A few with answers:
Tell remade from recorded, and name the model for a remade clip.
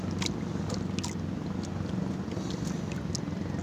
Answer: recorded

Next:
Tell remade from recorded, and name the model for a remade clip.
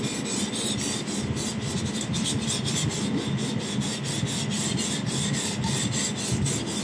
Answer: recorded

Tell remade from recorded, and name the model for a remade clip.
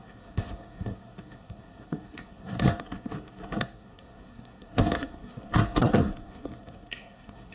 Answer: remade, codec, SNAC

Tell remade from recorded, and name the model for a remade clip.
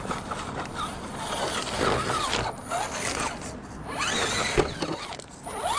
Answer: recorded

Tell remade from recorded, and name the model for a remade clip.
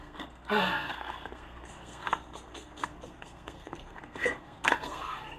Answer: remade, codec, SNAC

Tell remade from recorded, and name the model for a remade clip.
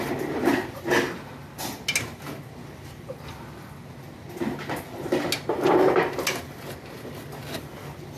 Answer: recorded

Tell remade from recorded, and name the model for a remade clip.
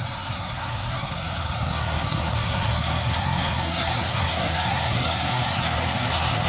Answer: remade, codec, SNAC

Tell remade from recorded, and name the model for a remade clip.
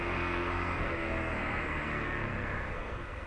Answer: remade, codec, SNAC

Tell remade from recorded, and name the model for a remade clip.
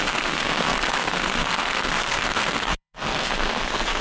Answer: remade, codec, SNAC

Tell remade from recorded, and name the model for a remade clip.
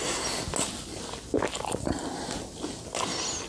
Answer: recorded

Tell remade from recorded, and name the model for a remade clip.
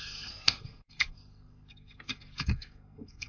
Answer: remade, codec, SNAC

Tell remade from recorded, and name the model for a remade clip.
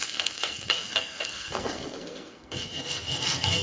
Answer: remade, codec, SNAC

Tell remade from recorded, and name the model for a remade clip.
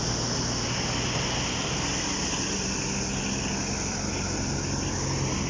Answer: recorded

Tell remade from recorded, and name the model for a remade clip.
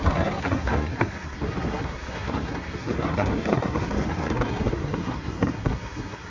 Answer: remade, codec, SNAC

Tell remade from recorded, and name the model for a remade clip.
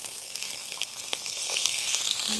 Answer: remade, codec, SNAC